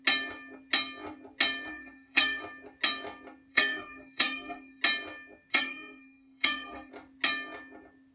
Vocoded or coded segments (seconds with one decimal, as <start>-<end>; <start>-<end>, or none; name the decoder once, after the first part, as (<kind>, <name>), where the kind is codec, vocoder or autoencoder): 1.7-2.4 (codec, SNAC); 3.5-4.8; 5.5-6.9